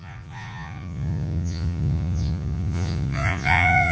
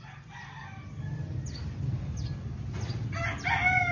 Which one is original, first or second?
second